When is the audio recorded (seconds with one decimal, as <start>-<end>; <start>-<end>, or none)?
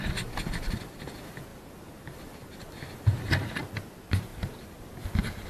0.0-5.5